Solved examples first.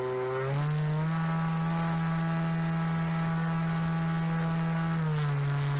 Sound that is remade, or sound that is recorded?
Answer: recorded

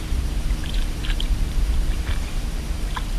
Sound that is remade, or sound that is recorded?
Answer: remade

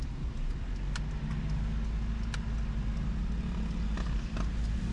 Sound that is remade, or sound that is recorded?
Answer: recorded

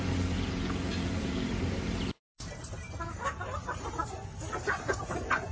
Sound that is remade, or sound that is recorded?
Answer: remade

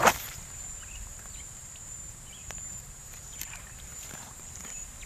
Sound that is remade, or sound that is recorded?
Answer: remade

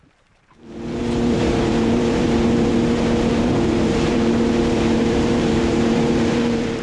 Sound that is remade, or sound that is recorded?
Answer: remade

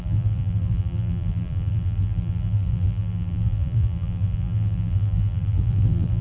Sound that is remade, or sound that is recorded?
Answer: remade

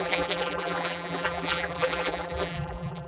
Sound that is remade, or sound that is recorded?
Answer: remade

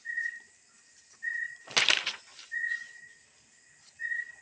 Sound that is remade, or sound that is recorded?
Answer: recorded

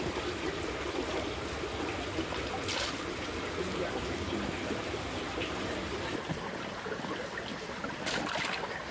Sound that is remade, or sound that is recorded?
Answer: remade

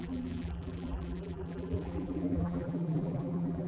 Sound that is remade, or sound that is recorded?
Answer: remade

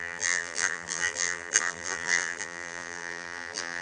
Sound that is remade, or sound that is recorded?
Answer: remade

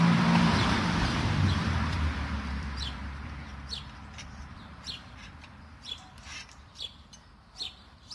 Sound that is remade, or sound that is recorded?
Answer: remade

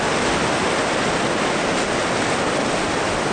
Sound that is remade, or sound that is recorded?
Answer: recorded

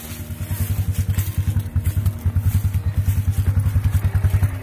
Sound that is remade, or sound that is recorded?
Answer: recorded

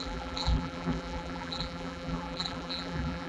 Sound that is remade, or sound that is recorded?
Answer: remade